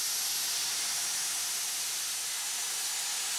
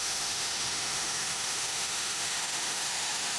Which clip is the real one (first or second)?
first